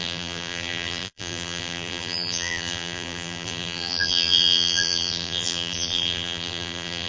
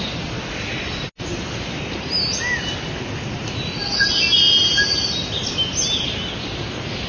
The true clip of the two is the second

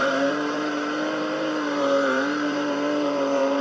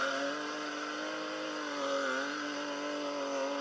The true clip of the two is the second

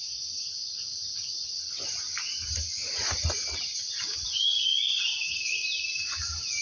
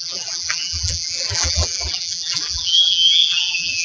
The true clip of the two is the first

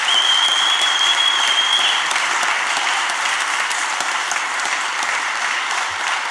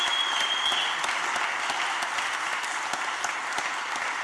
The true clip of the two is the second